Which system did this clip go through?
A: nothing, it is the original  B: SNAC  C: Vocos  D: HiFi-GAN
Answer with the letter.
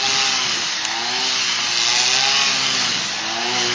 A